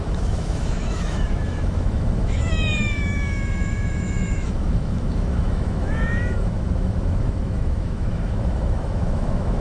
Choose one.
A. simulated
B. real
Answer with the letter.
A